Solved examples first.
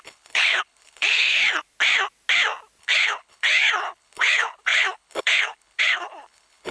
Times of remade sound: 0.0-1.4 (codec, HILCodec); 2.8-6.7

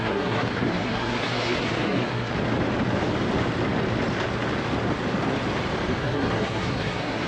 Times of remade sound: 0.0-2.3 (codec, SNAC); 6.0-7.3